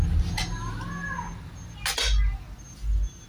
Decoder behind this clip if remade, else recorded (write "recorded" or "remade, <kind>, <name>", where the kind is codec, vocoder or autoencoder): recorded